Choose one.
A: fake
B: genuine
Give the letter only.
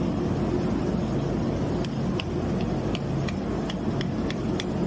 B